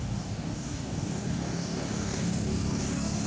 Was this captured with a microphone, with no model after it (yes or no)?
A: no